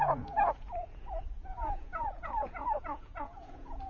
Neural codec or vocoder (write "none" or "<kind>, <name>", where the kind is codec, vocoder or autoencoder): vocoder, Vocos